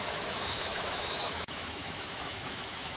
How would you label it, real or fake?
fake